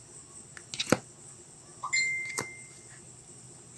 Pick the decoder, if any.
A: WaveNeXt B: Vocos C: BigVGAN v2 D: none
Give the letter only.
D